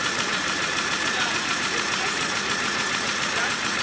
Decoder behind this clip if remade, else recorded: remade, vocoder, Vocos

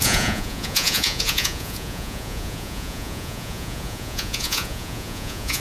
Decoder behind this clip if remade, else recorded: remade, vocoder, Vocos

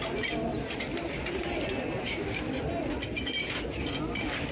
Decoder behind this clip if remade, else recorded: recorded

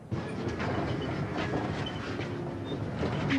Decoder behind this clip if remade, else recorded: recorded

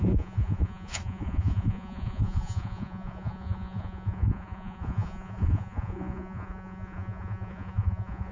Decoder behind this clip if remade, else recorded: remade, vocoder, Vocos